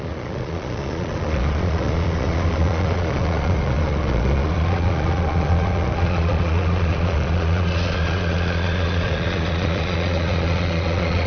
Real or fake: fake